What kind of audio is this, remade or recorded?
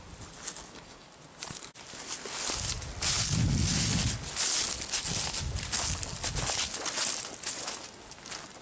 recorded